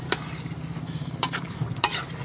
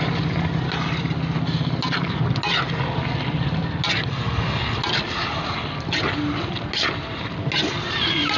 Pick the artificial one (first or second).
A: first